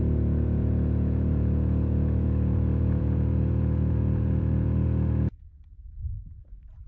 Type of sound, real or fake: fake